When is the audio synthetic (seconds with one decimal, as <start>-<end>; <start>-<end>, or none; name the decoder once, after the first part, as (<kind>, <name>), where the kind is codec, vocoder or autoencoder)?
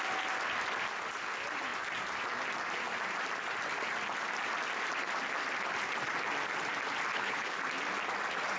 7.1-7.6 (codec, HILCodec)